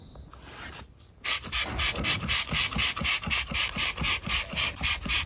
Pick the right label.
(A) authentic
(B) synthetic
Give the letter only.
A